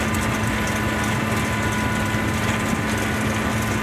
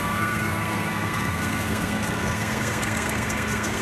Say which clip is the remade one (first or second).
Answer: second